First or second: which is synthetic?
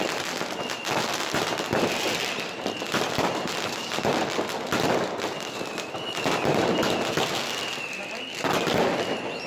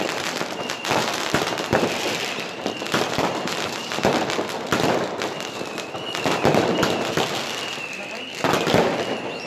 second